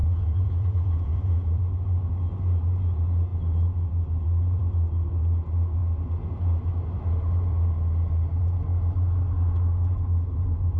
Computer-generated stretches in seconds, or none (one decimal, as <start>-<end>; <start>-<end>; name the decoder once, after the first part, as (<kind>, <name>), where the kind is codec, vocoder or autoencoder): 0.0-1.6 (vocoder, Vocos)